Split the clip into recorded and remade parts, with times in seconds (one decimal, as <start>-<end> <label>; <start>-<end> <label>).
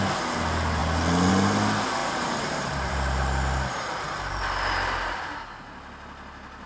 0.0-2.0 recorded; 2.0-4.4 remade; 4.4-6.7 recorded